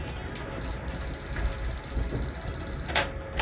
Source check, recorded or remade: recorded